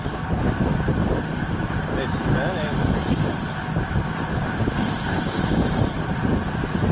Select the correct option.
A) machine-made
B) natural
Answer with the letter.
B